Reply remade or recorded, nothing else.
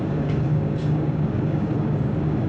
remade